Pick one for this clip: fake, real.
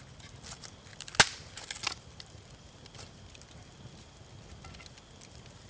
real